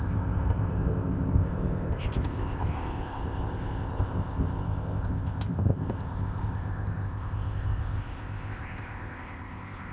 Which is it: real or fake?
fake